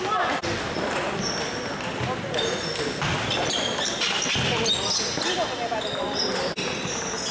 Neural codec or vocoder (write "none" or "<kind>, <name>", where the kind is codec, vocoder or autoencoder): none